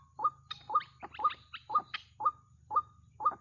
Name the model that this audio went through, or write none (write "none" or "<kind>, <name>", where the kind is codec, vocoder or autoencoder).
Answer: none